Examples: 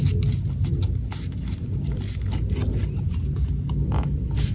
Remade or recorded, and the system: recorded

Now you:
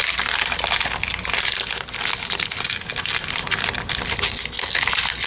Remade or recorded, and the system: recorded